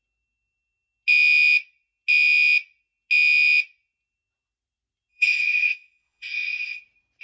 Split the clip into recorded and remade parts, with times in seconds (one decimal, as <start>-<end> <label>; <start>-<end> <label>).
0.0-5.1 recorded; 5.1-6.8 remade; 6.8-7.2 recorded